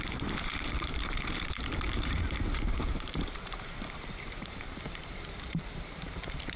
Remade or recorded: remade